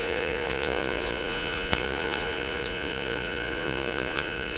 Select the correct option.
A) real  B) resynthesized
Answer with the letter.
B